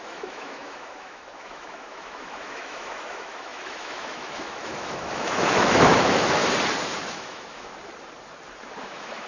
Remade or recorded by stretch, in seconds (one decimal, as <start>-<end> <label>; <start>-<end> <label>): 0.0-6.4 remade; 6.4-7.1 recorded; 7.1-7.7 remade; 7.7-8.8 recorded; 8.8-9.3 remade